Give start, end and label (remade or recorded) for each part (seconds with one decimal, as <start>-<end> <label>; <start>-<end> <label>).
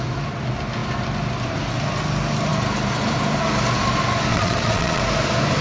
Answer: 0.0-4.3 recorded; 4.3-5.0 remade; 5.0-5.6 recorded